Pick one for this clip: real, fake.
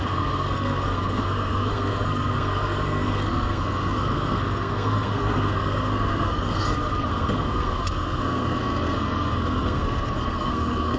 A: fake